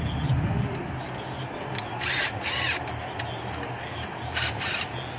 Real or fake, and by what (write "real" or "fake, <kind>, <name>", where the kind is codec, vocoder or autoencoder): real